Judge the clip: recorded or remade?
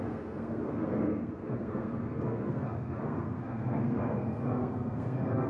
remade